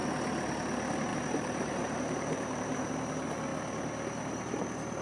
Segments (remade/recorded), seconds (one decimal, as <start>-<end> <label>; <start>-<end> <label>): 0.0-1.1 recorded; 1.1-2.9 remade; 2.9-5.0 recorded